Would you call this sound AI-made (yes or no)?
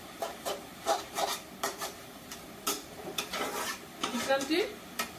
yes